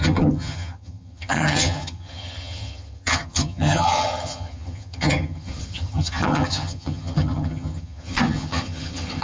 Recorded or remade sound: remade